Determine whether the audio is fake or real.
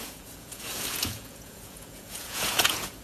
fake